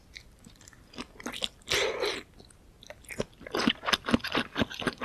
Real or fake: real